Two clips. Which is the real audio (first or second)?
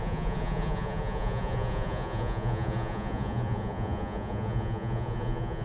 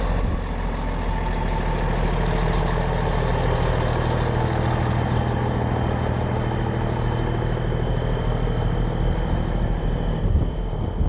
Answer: second